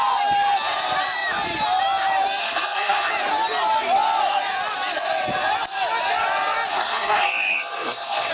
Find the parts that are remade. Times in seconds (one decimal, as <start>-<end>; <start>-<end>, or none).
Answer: 2.4-3.1; 6.7-8.3